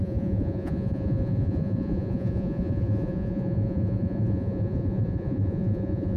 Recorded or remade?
remade